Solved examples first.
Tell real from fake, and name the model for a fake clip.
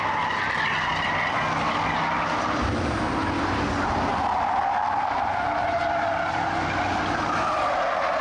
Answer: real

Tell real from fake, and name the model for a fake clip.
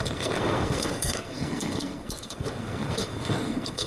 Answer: fake, codec, SNAC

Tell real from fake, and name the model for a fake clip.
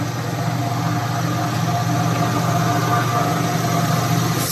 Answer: real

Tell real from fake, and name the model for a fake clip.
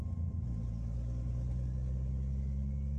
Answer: real